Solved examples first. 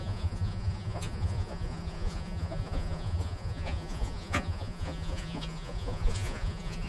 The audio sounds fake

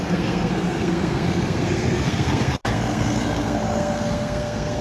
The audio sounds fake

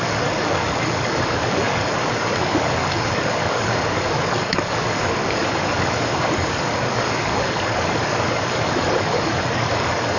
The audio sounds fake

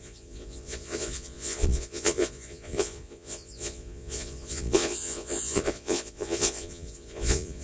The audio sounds fake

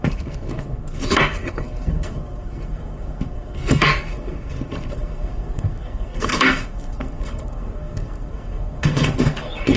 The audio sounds fake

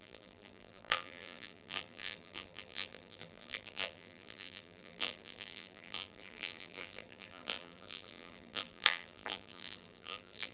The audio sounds fake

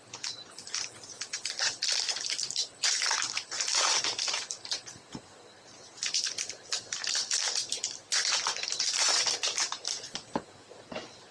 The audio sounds fake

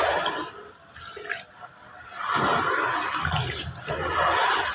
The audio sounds real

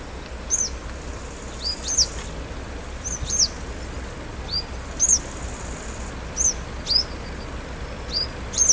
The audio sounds real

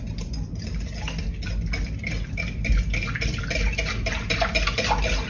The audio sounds real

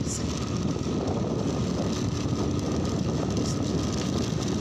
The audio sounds real